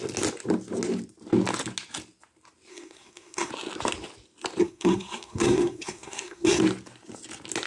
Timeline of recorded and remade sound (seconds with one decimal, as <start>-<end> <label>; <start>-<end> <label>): 0.0-2.7 recorded; 2.7-3.5 remade; 3.5-4.6 recorded; 4.6-6.6 remade; 6.6-7.7 recorded